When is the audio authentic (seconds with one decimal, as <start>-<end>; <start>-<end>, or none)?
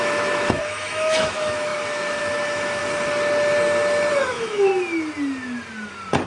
2.8-4.1; 4.7-6.3